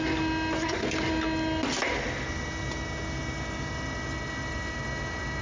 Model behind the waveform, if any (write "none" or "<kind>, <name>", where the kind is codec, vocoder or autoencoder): none